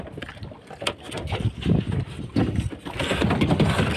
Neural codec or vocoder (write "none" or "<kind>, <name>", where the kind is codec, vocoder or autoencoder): none